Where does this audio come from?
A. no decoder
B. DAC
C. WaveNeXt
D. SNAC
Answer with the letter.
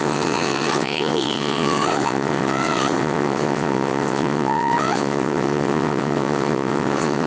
C